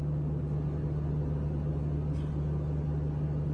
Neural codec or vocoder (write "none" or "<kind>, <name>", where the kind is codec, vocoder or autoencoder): none